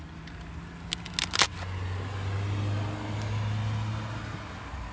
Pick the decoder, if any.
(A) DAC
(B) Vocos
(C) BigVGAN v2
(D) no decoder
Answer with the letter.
D